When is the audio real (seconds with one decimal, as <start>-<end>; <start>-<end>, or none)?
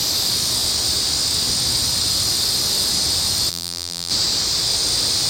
0.0-3.5; 4.1-5.3